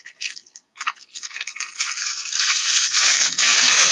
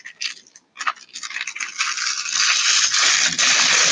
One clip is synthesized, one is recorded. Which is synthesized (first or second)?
first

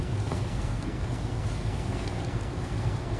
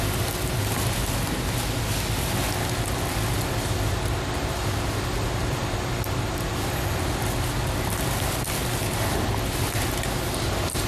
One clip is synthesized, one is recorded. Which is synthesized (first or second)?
first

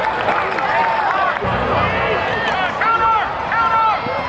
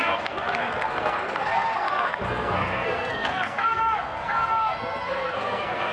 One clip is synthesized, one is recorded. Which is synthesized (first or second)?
second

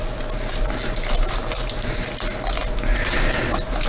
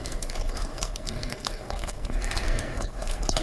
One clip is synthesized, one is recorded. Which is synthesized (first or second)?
second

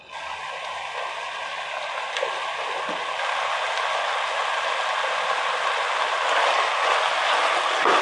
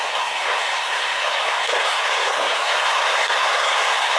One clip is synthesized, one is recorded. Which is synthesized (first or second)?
second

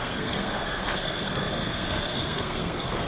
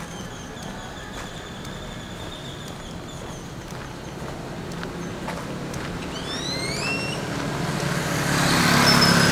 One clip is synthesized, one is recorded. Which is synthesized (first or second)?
first